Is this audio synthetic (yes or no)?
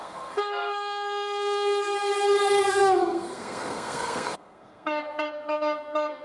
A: yes